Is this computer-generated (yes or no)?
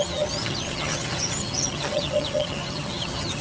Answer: yes